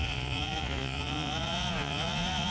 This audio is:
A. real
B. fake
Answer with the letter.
B